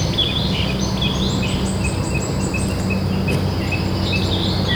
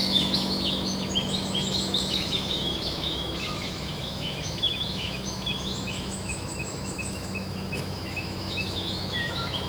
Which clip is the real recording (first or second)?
first